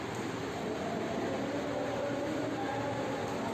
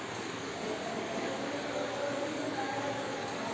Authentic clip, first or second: first